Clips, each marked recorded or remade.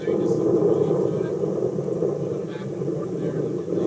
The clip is recorded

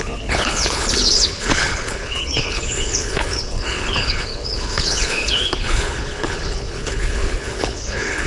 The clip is remade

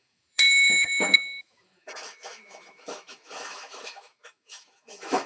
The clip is remade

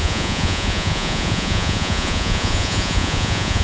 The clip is remade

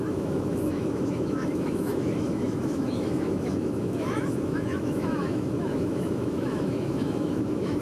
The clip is remade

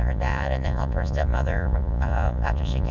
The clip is remade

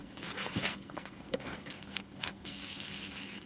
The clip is remade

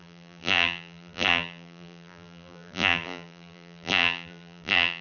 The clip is remade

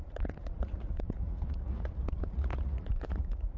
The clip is remade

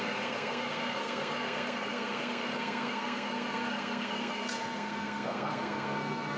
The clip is remade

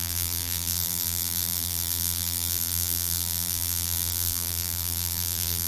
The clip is remade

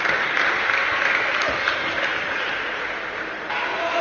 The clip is recorded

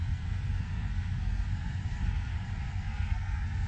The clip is remade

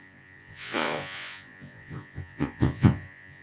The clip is remade